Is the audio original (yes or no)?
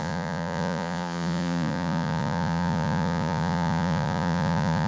no